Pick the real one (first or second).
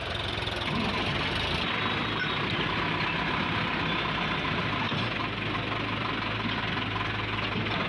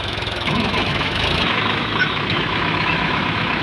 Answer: first